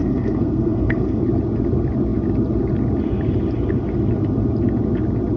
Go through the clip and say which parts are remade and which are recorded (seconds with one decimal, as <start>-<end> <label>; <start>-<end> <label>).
0.0-1.2 remade; 1.2-5.4 recorded